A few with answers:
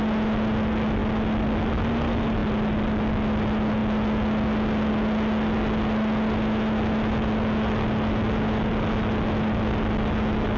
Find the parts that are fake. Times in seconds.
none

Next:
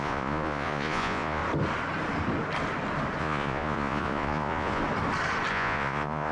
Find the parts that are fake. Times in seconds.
0.0-1.4 (vocoder, Vocos); 3.2-4.8; 5.5-6.3

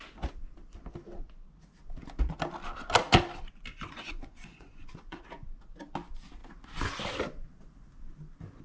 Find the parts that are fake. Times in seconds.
3.7-5.2 (vocoder, Vocos)

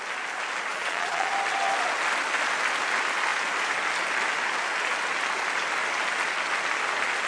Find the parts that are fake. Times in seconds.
0.7-1.3 (vocoder, Vocos)